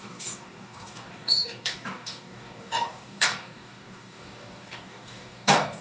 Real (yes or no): no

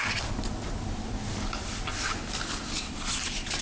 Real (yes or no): yes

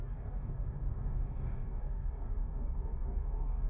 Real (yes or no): no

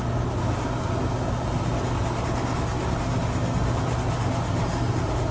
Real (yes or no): yes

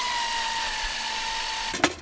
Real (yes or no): yes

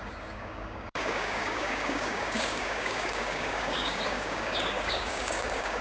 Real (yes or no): no